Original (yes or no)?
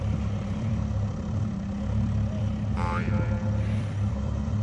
no